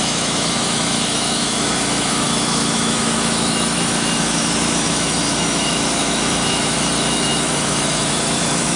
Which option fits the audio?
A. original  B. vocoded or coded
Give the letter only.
B